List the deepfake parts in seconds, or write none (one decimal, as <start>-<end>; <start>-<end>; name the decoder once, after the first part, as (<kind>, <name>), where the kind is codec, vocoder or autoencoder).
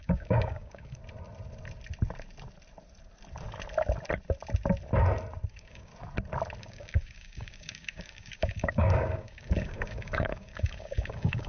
0.0-1.0 (codec, DAC); 5.5-5.9; 6.6-11.5